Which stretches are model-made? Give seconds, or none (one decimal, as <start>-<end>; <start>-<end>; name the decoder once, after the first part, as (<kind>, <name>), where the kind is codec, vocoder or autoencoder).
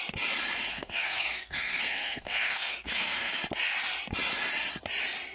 0.7-3.4 (codec, SNAC)